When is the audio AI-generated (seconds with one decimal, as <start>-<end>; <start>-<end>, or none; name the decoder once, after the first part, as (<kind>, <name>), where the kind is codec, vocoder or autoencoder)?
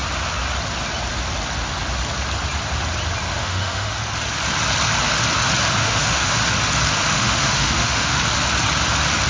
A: 3.3-4.0 (autoencoder, DAC-VAE); 5.8-6.4; 7.1-8.2